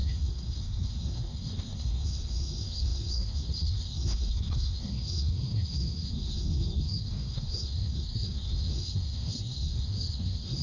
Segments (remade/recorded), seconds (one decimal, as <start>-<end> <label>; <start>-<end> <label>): 0.0-10.6 remade